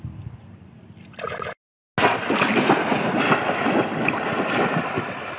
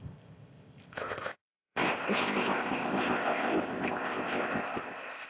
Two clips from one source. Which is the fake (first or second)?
second